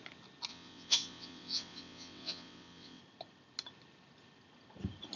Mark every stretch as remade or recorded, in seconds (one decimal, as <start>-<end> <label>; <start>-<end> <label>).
0.0-0.5 recorded; 0.5-3.0 remade; 3.0-5.2 recorded